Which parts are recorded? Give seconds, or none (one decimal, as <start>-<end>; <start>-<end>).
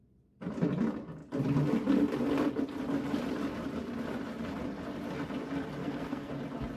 0.0-5.8; 6.3-6.8